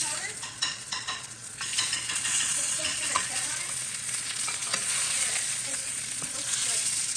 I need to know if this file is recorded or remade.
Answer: remade